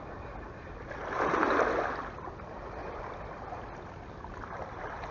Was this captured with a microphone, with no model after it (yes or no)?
yes